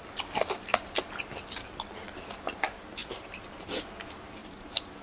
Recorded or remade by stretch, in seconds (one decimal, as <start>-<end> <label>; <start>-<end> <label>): 0.0-3.0 recorded; 3.0-3.8 remade; 3.8-4.4 recorded; 4.4-5.0 remade